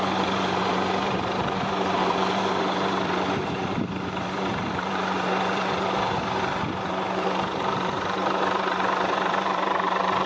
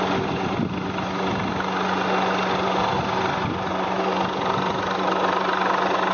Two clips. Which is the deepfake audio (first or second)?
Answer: first